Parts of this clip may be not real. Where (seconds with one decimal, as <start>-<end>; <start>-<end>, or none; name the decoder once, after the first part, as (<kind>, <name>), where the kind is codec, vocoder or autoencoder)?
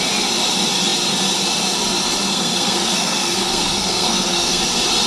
2.3-4.6 (codec, SNAC)